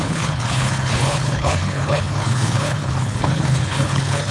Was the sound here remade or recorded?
remade